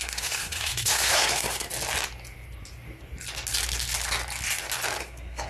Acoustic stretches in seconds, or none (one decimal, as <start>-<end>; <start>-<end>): 1.7-5.0